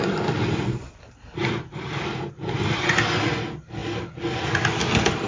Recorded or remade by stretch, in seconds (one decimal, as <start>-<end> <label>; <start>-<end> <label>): 0.0-1.4 recorded; 1.4-2.9 remade; 2.9-5.3 recorded